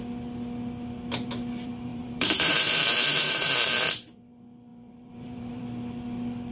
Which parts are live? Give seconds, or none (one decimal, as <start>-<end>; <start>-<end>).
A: 0.0-1.9; 3.5-4.7; 5.6-6.5

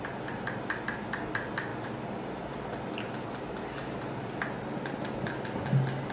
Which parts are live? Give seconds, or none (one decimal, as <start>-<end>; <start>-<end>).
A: 0.0-6.1

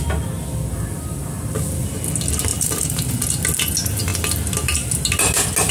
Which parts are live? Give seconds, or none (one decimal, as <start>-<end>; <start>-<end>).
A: 0.0-2.5; 3.1-5.7

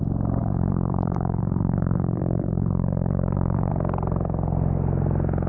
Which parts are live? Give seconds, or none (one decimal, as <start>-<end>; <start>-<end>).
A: 0.0-0.4; 3.7-5.5

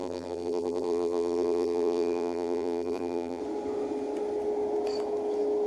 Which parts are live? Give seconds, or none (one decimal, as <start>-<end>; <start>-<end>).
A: 3.4-5.7

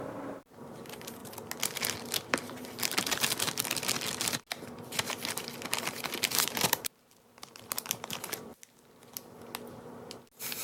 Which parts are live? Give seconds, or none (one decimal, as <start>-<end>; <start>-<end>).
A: 1.2-6.2; 8.5-10.6

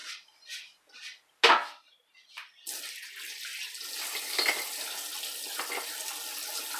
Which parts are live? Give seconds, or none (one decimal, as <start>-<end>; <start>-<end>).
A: 0.0-3.5; 5.7-6.8